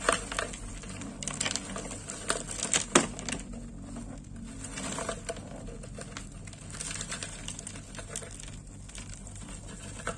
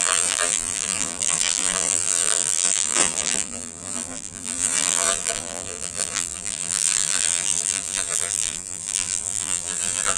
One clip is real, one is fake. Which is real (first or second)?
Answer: first